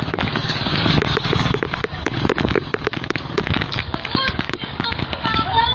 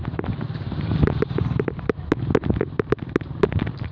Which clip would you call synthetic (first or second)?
first